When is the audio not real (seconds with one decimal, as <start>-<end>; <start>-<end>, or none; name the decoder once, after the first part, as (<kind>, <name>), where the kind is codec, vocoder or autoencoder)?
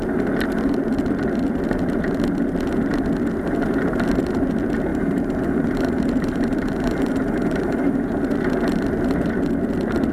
4.9-8.2 (vocoder, BigVGAN v2)